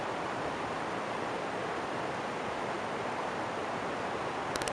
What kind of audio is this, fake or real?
real